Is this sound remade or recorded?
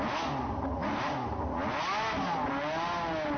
recorded